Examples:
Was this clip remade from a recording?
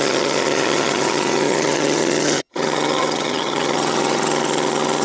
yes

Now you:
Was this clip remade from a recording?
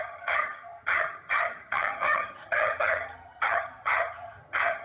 yes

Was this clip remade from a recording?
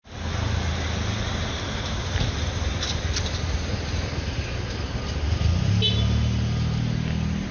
no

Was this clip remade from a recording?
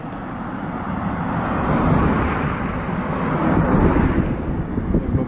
no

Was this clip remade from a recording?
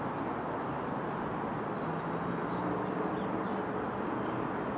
no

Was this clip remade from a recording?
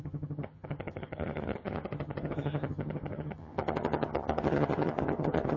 yes